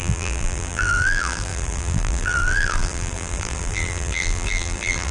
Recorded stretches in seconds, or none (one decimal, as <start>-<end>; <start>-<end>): none